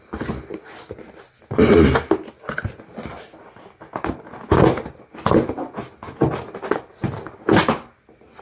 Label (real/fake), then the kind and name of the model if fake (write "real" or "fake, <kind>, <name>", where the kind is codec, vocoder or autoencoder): real